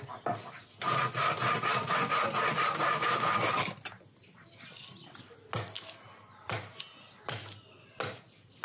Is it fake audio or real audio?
real